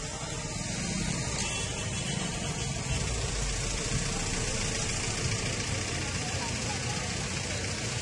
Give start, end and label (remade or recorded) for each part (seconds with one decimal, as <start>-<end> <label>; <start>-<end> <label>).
0.0-1.7 recorded; 1.7-6.0 remade; 6.0-8.0 recorded